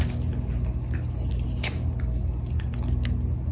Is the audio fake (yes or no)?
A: no